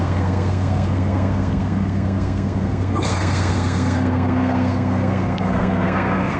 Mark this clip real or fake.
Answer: fake